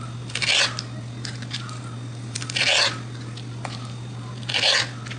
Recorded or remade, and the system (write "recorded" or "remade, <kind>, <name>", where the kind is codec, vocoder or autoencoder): recorded